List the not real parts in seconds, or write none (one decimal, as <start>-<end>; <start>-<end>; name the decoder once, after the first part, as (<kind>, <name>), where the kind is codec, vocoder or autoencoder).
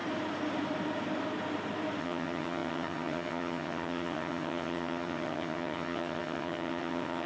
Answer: 2.0-7.3 (vocoder, HiFi-GAN)